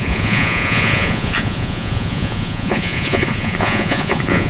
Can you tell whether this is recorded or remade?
remade